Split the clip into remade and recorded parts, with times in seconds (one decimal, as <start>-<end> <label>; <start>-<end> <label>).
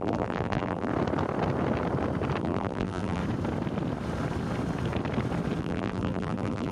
0.0-0.9 remade; 0.9-2.4 recorded; 2.4-3.2 remade; 3.2-5.6 recorded; 5.6-6.7 remade